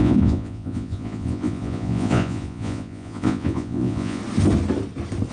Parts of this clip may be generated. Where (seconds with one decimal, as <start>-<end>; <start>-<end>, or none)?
0.0-4.2